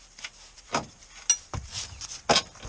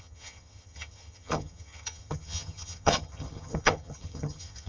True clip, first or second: first